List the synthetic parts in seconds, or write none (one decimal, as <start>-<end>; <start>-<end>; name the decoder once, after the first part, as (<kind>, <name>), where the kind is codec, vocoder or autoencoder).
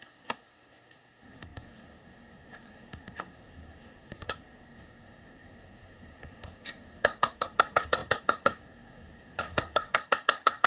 0.0-10.7 (codec, SNAC)